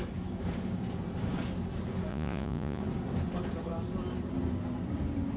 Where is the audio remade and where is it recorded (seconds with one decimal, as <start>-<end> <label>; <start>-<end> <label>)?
0.0-2.1 recorded; 2.1-2.8 remade; 2.8-5.4 recorded